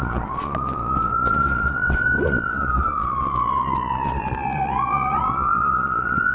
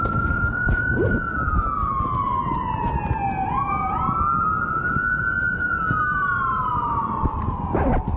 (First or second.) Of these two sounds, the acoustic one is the second